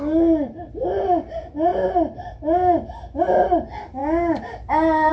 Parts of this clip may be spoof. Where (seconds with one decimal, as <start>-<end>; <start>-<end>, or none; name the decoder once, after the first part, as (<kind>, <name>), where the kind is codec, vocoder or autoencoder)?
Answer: none